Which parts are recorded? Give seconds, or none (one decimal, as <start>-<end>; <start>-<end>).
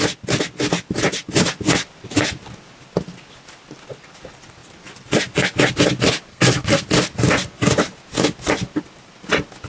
0.0-6.3; 6.8-9.7